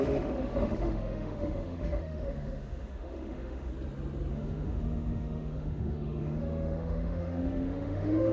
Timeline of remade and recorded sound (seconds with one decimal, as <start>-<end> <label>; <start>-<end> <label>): 0.0-3.7 remade; 3.7-4.3 recorded; 4.3-8.3 remade